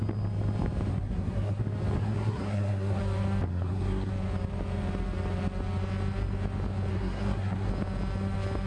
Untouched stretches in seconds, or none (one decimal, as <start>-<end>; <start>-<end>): 0.0-0.9; 1.6-2.0; 3.0-3.5; 4.1-6.9; 7.7-8.7